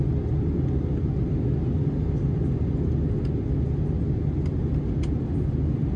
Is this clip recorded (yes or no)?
yes